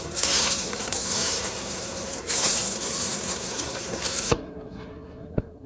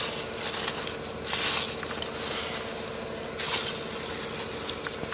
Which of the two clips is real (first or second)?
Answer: second